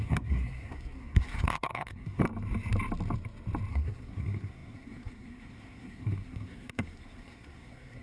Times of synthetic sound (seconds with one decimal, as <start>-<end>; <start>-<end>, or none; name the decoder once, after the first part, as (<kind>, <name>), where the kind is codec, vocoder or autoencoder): 0.0-2.2 (codec, SNAC); 3.7-8.0